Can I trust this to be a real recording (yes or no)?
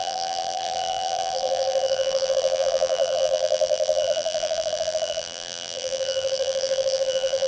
no